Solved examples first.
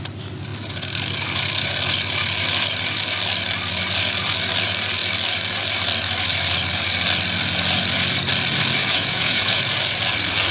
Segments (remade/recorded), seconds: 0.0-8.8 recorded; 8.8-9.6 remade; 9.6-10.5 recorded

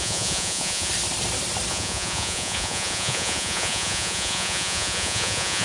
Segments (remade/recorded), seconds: 0.0-0.9 remade; 0.9-1.7 recorded; 1.7-5.6 remade

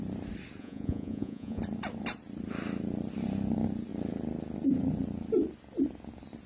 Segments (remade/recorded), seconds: 0.0-0.6 recorded; 0.6-1.6 remade; 1.6-6.5 recorded

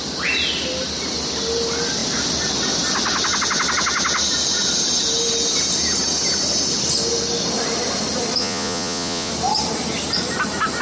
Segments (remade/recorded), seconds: 0.0-8.4 recorded; 8.4-9.3 remade; 9.3-10.8 recorded

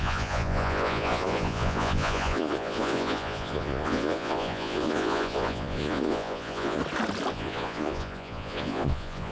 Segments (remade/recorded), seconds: 0.0-6.8 remade; 6.8-7.3 recorded; 7.3-9.3 remade